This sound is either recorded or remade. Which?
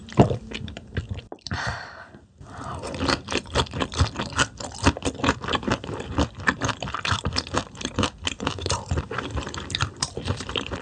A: remade